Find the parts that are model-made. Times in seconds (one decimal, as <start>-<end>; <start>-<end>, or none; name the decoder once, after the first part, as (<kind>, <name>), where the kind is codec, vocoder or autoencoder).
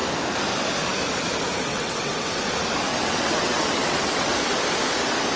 1.7-2.3 (vocoder, WaveNeXt); 2.9-4.3